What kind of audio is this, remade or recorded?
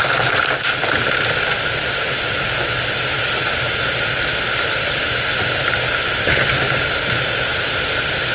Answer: recorded